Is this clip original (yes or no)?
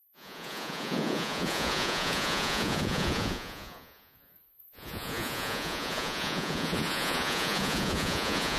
no